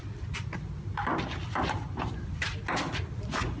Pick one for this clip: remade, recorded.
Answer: recorded